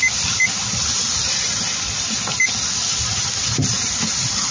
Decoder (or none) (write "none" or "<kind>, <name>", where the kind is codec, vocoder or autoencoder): none